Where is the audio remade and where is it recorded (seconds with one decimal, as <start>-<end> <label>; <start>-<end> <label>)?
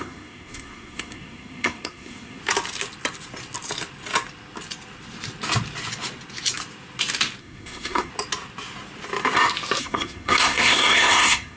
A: 0.0-2.4 remade; 2.4-7.4 recorded; 7.4-8.1 remade; 8.1-9.8 recorded; 9.8-11.6 remade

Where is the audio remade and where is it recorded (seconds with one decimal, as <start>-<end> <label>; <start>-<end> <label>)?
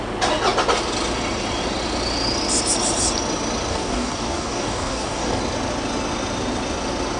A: 0.0-3.7 recorded; 3.7-5.4 remade; 5.4-7.2 recorded